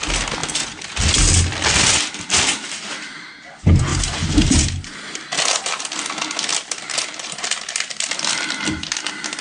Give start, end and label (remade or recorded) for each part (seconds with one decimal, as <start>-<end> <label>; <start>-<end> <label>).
0.0-3.9 recorded; 3.9-6.0 remade; 6.0-6.5 recorded; 6.5-7.7 remade; 7.7-9.4 recorded